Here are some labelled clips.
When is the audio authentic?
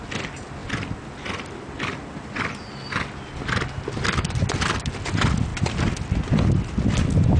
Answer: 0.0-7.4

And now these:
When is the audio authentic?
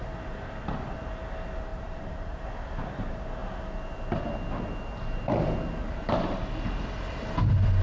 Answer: 0.0-1.7; 2.4-5.8; 6.4-7.8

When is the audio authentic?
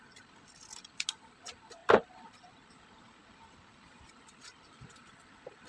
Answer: 0.0-5.7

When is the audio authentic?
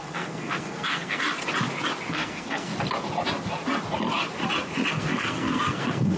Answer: 1.2-2.1; 2.7-4.9